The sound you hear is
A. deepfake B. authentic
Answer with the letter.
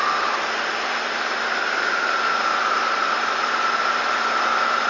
B